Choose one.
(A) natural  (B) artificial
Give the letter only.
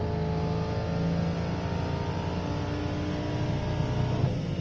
A